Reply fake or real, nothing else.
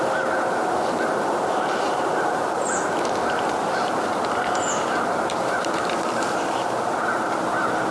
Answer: fake